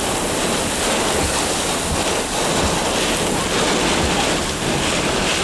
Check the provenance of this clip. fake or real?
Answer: real